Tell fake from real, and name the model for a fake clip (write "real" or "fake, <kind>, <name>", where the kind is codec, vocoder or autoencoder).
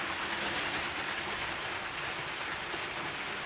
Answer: real